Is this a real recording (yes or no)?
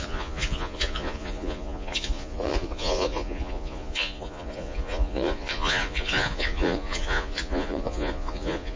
no